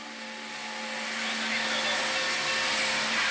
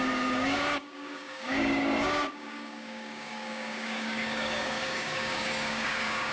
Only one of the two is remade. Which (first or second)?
second